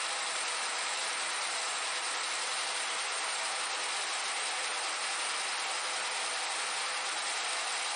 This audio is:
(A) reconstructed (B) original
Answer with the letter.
B